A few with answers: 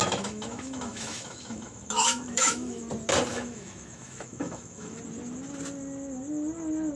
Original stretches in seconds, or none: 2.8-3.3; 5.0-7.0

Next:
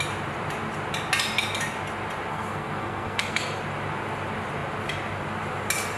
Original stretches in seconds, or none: 0.0-2.3; 3.6-6.0

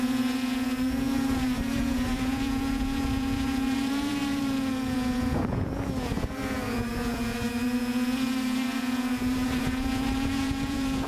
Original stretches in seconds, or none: none

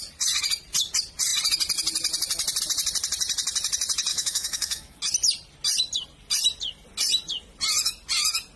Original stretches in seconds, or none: 0.0-4.1; 5.0-8.6

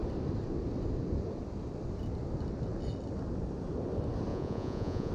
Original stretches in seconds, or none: 0.0-4.3

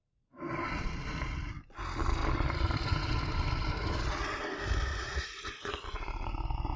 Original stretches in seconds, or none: 0.0-4.9; 5.5-6.8

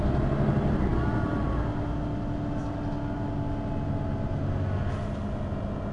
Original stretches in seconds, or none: 0.0-5.9

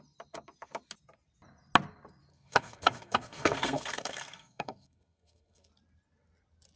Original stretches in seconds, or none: 0.0-2.3; 5.7-6.8